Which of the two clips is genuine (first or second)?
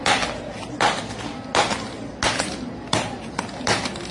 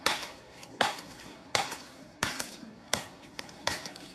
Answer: first